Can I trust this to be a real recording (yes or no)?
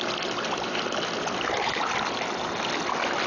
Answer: yes